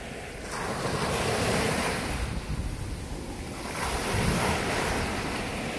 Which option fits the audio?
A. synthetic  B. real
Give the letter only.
B